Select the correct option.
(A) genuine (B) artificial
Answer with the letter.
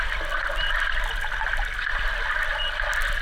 A